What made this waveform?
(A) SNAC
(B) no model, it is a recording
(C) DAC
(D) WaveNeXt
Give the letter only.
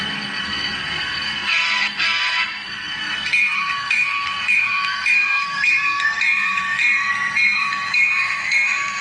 A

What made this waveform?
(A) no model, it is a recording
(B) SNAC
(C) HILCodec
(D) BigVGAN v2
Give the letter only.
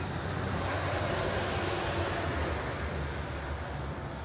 A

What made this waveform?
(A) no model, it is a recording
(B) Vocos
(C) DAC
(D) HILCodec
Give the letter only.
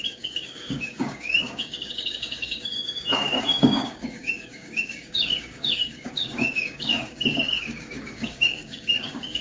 C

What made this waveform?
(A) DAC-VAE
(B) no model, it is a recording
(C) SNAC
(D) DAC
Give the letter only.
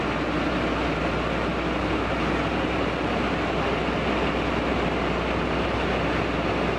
B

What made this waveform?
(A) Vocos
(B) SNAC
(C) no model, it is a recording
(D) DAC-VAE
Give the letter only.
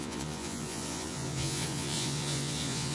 A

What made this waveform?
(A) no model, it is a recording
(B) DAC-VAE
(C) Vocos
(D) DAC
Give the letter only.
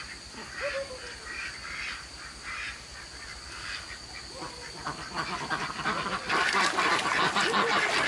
A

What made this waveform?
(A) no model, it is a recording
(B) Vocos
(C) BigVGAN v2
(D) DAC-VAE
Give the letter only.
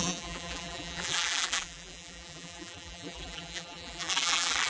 C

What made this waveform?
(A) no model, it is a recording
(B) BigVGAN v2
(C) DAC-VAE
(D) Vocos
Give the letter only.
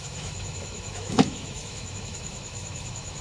C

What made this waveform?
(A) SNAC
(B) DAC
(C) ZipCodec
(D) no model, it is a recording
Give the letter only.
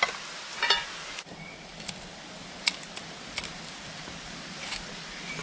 D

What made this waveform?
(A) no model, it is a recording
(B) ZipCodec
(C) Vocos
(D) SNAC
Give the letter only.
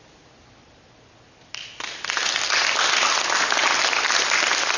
A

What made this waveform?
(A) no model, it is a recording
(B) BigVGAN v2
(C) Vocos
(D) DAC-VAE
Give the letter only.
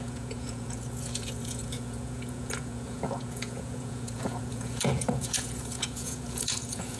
C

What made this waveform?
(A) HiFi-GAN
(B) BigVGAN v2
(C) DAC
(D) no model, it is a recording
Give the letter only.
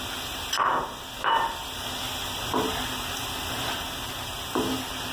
D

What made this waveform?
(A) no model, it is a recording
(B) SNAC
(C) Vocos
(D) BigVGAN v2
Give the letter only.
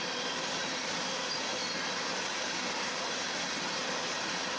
A